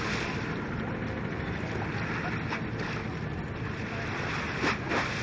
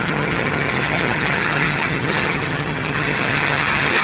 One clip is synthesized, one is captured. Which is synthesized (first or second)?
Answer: second